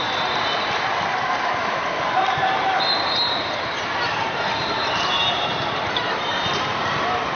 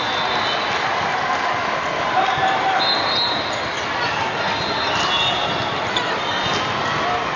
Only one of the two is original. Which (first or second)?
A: second